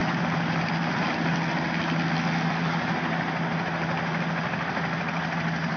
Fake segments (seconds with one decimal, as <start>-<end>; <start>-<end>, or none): none